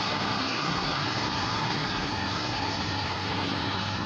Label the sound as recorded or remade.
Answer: remade